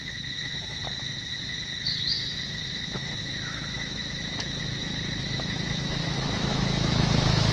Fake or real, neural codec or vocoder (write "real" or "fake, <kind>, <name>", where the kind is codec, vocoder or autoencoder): fake, autoencoder, DAC-VAE